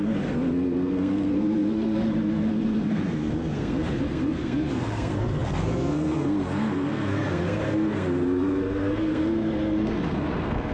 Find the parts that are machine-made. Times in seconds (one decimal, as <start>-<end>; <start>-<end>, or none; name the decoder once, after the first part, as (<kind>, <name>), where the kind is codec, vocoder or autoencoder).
0.0-10.7 (codec, SNAC)